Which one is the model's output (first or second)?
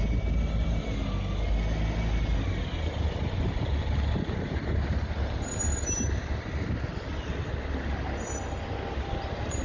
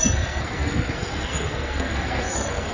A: second